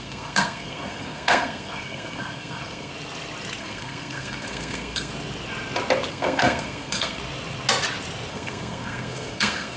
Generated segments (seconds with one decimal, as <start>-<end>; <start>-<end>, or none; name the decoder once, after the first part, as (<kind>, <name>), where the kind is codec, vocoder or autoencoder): 0.0-2.9 (codec, SNAC); 3.6-5.1; 6.1-7.2; 8.3-9.8